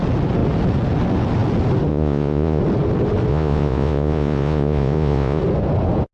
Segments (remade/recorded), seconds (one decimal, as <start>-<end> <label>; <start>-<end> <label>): 0.0-1.9 recorded; 1.9-2.6 remade; 2.6-3.3 recorded; 3.3-5.4 remade; 5.4-6.1 recorded